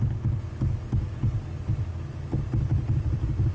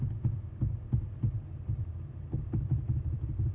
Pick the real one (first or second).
first